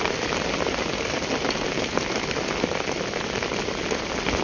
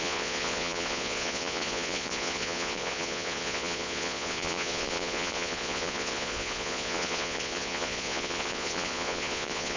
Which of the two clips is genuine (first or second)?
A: first